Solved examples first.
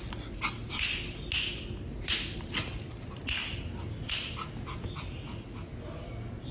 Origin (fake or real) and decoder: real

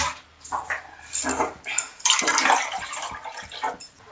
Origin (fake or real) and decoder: real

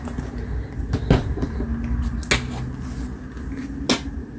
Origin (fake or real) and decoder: real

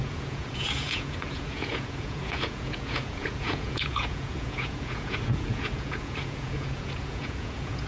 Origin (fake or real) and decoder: fake, vocoder, Vocos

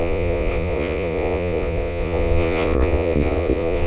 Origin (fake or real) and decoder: fake, vocoder, Vocos